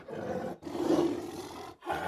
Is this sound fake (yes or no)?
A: yes